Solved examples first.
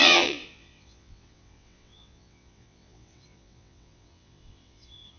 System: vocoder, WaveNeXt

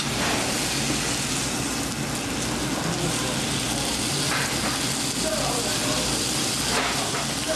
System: none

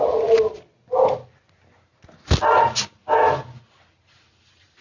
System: none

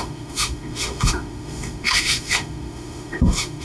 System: autoencoder, DAC-VAE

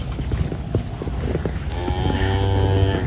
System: none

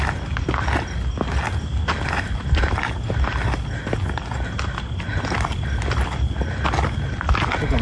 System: none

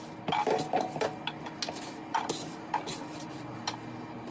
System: none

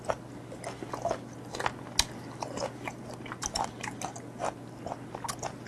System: none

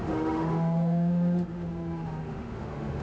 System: autoencoder, DAC-VAE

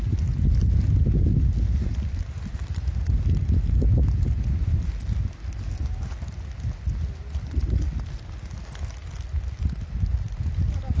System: none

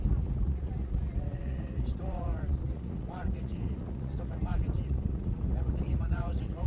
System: vocoder, Vocos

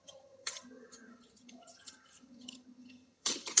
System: vocoder, HiFi-GAN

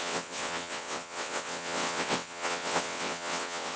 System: vocoder, WaveNeXt